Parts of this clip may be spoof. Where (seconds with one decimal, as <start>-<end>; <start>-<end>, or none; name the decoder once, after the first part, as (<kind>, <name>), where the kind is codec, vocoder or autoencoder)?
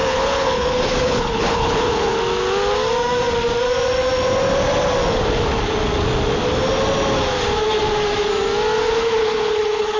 0.0-2.2 (codec, HILCodec); 8.8-10.0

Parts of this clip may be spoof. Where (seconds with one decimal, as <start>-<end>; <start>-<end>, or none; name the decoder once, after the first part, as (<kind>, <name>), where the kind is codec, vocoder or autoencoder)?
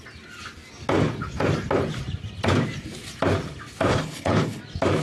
3.9-4.6 (codec, HILCodec)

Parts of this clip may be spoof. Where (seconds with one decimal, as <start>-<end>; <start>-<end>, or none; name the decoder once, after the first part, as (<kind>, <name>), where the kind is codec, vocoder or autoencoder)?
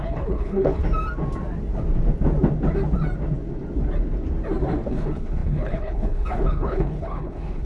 0.0-0.8 (codec, HILCodec); 4.9-7.7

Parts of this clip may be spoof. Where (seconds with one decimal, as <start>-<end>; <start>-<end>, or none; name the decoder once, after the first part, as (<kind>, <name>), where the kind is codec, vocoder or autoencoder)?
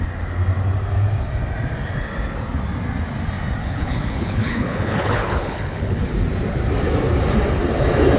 3.6-6.0 (codec, HILCodec)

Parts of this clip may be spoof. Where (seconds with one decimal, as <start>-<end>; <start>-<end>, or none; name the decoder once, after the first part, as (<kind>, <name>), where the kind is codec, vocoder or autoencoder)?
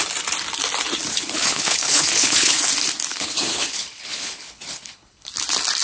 1.1-2.7 (codec, HILCodec); 3.1-5.3